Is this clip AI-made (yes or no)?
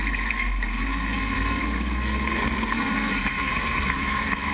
yes